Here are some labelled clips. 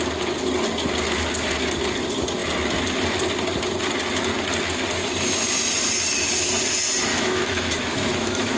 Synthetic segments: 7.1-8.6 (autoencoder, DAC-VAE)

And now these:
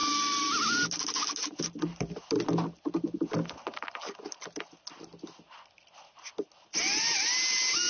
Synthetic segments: none